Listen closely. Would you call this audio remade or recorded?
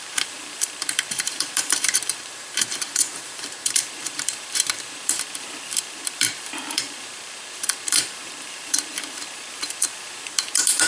remade